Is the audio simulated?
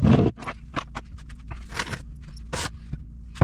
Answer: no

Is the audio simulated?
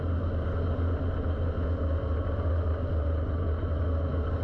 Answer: no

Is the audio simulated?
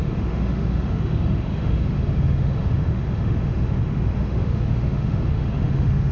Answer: yes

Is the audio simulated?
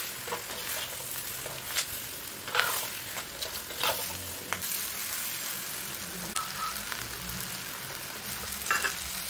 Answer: no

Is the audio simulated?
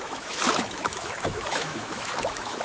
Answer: yes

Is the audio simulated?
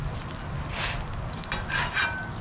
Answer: no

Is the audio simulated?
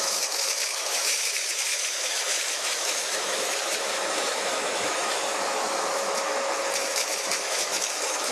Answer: yes